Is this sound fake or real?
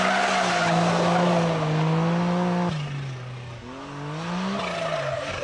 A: real